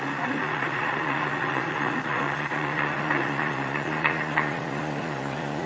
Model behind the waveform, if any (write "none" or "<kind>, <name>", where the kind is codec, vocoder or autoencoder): vocoder, Vocos